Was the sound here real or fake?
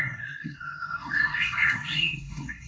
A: fake